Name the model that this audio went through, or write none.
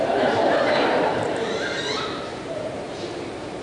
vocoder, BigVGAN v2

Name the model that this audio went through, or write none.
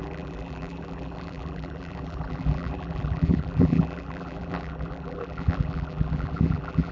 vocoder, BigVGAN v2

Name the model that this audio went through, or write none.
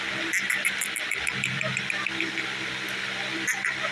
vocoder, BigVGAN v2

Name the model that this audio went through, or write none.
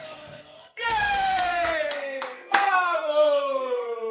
codec, SNAC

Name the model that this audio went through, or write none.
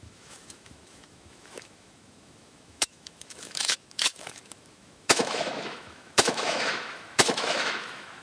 autoencoder, DAC-VAE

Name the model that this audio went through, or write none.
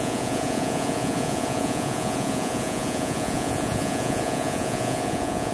vocoder, Vocos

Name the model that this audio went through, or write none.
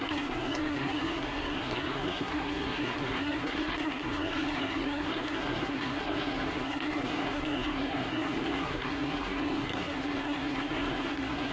codec, SNAC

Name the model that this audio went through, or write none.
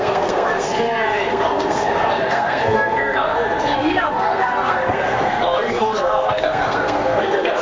codec, SNAC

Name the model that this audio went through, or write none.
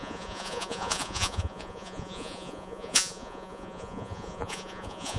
vocoder, Vocos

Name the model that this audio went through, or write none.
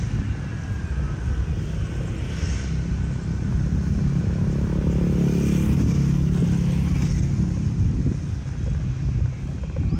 none